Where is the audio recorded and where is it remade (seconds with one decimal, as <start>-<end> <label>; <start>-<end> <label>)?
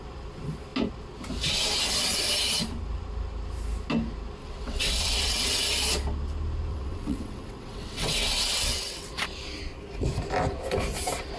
0.0-4.4 recorded; 4.4-5.5 remade; 5.5-6.7 recorded; 6.7-9.2 remade; 9.2-11.4 recorded